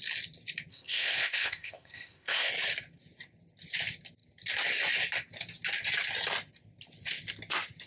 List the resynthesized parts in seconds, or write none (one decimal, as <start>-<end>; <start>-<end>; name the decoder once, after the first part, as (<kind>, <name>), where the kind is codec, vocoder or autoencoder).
0.7-2.5 (codec, ZipCodec)